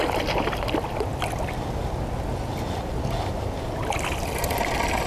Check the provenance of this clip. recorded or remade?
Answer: recorded